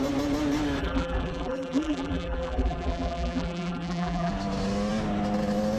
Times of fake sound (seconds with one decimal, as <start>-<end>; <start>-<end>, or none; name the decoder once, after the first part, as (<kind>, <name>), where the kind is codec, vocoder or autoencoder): 0.8-4.3 (vocoder, BigVGAN v2)